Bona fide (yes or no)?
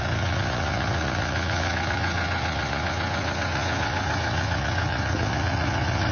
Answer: no